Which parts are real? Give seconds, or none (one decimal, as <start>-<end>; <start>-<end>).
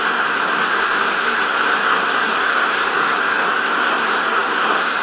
none